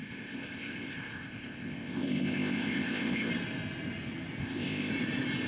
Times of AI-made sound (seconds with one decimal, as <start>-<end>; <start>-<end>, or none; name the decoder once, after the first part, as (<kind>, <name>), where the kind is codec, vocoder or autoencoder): 0.0-3.3 (codec, ZipCodec); 4.4-4.9